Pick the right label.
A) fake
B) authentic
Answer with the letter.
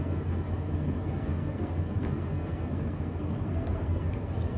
A